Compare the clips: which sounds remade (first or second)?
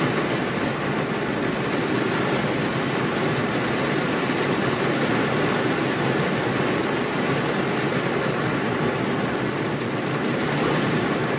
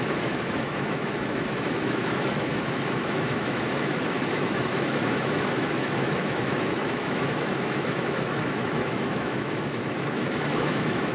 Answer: second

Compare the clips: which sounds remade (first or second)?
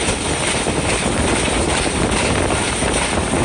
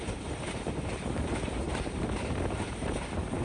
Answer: second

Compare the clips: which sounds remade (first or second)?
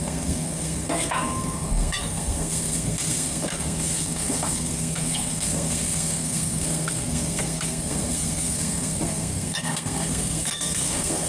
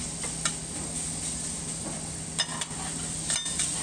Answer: first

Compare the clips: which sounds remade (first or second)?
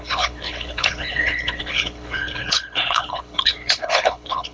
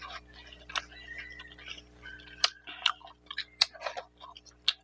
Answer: first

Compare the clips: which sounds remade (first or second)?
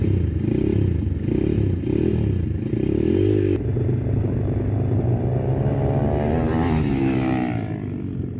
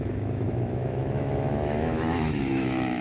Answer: second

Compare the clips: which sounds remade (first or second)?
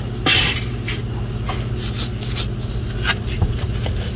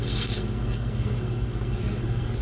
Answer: second